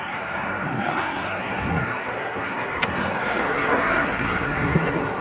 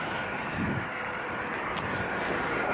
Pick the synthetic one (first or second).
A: first